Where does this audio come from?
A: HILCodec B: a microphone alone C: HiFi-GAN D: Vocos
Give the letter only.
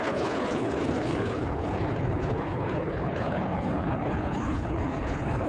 A